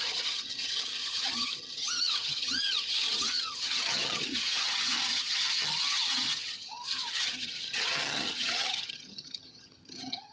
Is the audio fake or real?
fake